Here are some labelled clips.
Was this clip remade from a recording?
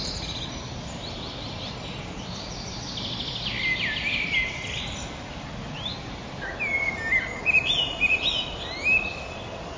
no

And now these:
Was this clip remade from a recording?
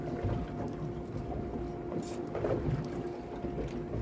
no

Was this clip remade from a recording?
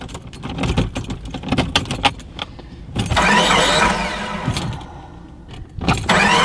no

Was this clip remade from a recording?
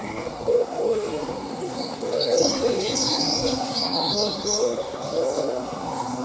yes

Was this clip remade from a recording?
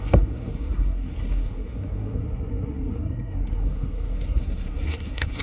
yes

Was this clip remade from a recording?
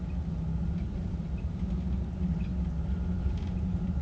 no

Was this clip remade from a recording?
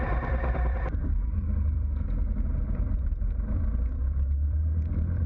yes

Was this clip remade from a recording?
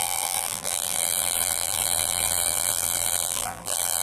yes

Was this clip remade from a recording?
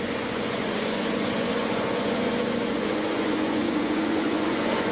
yes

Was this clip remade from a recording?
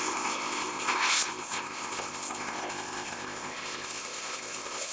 yes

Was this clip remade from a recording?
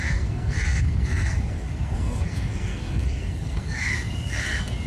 yes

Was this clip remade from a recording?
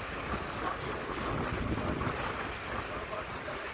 no